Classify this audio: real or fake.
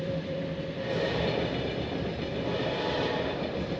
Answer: fake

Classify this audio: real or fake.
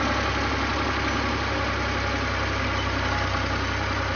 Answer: real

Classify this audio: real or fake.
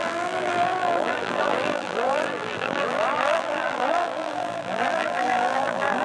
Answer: fake